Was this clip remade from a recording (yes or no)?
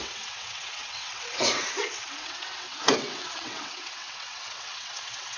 yes